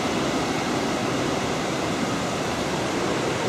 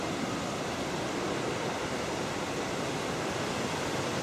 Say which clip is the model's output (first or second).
first